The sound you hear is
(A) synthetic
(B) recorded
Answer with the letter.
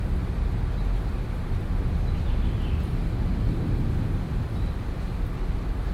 B